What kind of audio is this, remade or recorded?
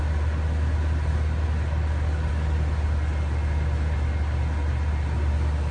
recorded